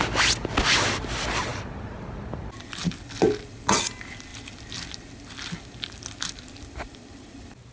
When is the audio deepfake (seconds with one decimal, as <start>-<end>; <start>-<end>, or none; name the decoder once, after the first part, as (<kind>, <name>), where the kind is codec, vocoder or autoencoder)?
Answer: none